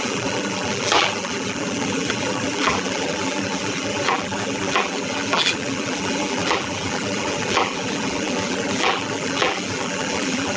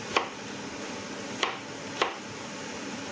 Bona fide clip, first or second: second